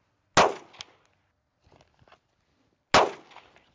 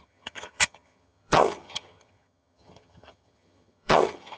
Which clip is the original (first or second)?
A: first